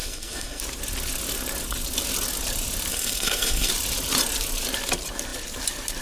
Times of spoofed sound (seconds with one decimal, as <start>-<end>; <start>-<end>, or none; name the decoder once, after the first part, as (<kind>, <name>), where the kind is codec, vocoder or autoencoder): 0.0-0.6 (codec, SNAC); 2.9-3.7